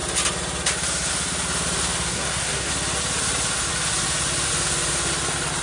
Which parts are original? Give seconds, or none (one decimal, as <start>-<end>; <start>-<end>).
0.0-2.1; 2.7-5.6